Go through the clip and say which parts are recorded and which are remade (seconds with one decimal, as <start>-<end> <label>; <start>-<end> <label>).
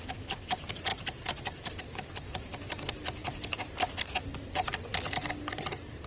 0.0-6.1 recorded